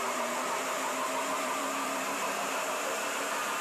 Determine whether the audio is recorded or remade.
remade